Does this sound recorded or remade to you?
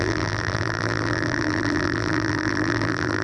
remade